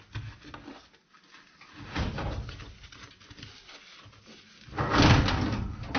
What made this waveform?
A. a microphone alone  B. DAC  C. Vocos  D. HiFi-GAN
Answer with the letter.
A